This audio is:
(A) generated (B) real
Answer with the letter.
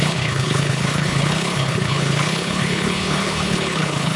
A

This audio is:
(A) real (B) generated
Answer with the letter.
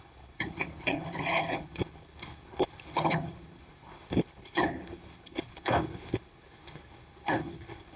B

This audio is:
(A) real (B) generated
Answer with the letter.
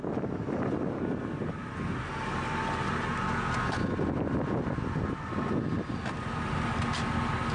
A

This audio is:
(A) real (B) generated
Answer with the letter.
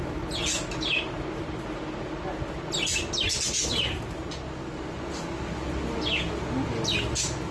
A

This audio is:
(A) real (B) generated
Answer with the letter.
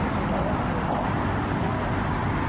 A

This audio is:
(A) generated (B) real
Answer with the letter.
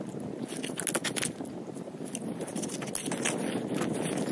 B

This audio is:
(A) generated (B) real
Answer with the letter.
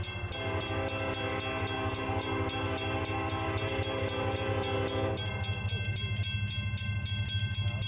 B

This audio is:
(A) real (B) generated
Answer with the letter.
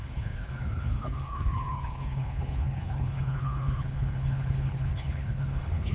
B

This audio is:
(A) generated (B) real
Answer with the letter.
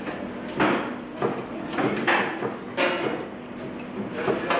B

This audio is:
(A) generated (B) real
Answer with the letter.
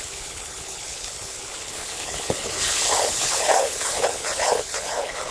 A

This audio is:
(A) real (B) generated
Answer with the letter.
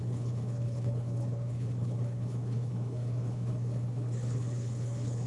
B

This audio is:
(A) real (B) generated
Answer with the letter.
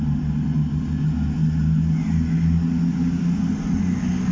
A